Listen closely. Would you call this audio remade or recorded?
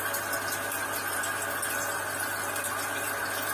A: recorded